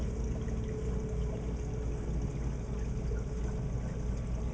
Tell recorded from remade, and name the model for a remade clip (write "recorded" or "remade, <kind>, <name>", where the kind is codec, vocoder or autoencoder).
recorded